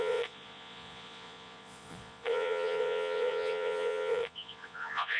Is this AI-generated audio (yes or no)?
yes